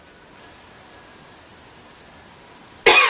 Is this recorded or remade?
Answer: recorded